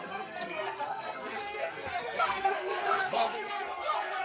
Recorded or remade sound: remade